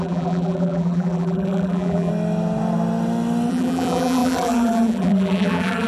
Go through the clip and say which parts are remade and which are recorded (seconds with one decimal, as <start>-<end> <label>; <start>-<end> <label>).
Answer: 0.0-2.1 remade; 2.1-3.5 recorded; 3.5-5.9 remade